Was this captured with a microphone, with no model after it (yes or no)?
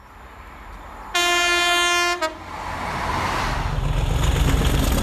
yes